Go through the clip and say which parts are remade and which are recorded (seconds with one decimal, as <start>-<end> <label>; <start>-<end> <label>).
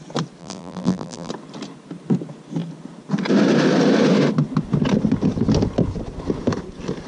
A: 0.0-0.4 recorded; 0.4-1.3 remade; 1.3-7.1 recorded